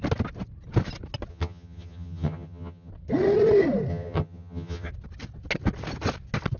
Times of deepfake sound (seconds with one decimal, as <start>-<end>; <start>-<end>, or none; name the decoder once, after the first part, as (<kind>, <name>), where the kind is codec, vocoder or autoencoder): 1.3-2.9 (vocoder, HiFi-GAN); 3.9-4.9